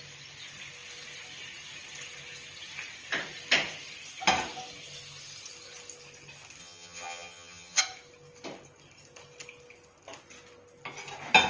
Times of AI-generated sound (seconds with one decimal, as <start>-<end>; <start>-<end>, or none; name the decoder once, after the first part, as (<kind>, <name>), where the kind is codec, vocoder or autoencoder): 6.6-7.8 (vocoder, HiFi-GAN)